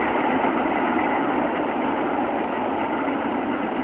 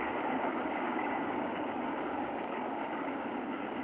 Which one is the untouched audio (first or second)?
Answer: first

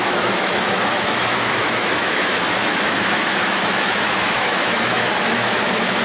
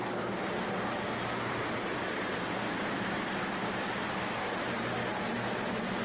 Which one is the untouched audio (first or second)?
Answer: second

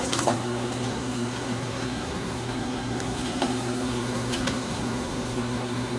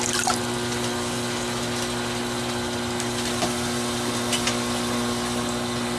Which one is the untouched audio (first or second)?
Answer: second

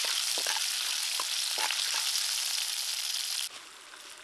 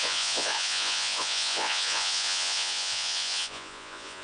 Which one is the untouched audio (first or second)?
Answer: first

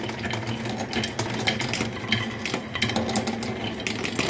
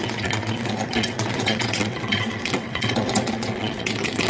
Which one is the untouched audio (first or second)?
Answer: first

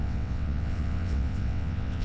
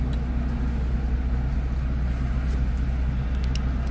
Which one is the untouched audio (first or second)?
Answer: second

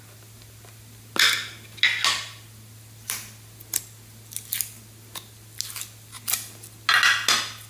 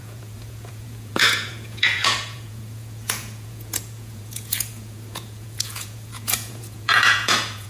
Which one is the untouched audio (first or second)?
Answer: first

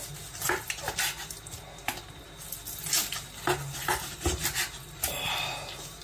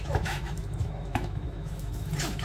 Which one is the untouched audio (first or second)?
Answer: first